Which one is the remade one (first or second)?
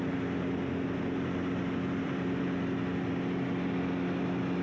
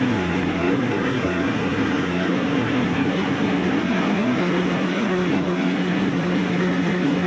second